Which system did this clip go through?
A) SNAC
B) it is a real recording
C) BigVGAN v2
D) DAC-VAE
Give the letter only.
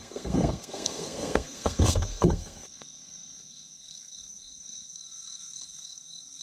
A